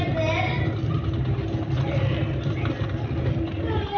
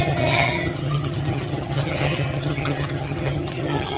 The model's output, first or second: second